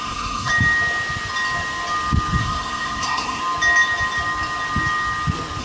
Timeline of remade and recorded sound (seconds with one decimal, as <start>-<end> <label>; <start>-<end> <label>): 0.0-0.5 remade; 0.5-2.4 recorded; 2.4-3.4 remade; 3.4-5.6 recorded